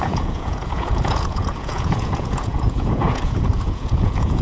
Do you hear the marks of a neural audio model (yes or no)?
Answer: yes